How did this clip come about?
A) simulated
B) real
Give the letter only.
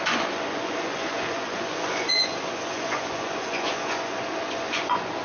A